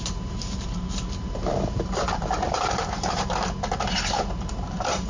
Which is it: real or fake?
fake